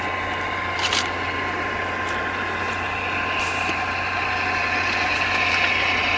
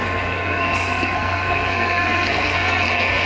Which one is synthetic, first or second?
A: second